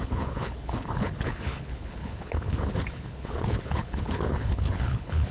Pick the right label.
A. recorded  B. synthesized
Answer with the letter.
B